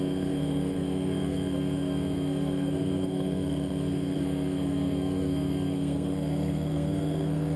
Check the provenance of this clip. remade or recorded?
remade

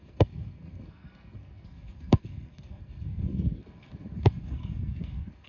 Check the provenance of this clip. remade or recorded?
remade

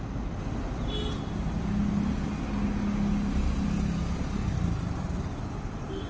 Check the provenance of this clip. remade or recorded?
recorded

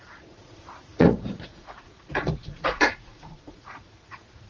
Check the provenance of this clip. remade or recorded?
remade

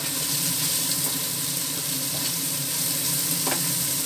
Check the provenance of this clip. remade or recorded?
recorded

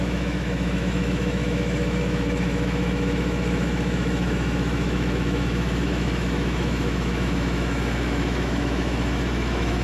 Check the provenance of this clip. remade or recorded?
remade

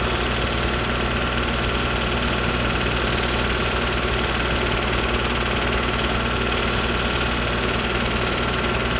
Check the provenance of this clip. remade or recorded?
recorded